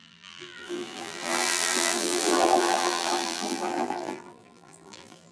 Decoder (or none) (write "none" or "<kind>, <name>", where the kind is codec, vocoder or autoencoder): vocoder, BigVGAN v2